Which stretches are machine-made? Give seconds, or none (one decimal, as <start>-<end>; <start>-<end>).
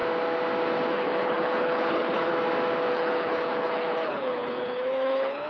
0.9-2.3; 2.9-5.5